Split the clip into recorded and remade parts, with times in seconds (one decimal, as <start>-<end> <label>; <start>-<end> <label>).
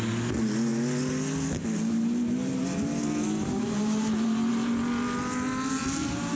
0.0-6.4 recorded